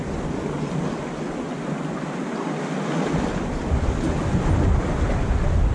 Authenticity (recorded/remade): recorded